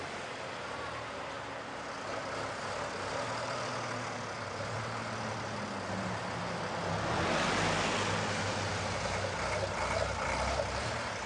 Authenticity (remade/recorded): recorded